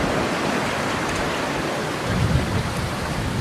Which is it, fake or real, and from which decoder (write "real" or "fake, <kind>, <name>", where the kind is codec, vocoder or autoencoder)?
real